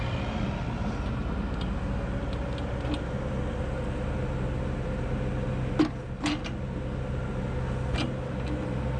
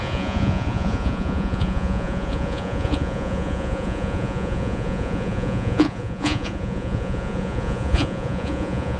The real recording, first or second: first